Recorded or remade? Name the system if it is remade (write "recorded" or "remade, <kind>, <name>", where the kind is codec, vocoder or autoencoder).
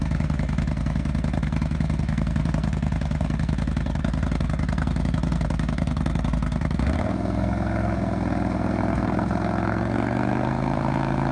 remade, codec, SNAC